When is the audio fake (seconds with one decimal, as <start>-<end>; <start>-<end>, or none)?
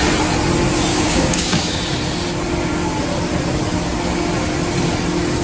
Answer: 0.9-1.8